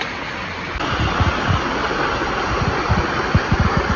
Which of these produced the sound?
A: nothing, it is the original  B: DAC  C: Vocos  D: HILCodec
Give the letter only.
A